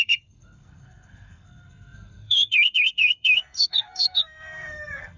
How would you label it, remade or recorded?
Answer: remade